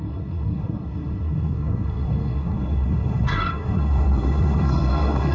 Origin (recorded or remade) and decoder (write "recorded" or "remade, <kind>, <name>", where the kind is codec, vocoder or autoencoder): remade, codec, SNAC